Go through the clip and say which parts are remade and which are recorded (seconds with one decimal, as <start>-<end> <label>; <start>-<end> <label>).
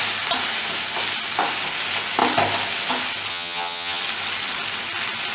0.0-3.3 recorded; 3.3-4.0 remade; 4.0-5.3 recorded